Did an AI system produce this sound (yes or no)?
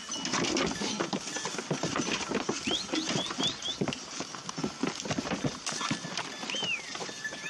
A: no